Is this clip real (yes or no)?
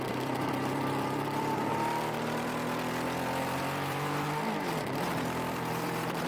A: no